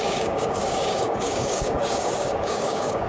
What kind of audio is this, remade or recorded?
remade